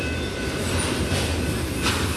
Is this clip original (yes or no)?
yes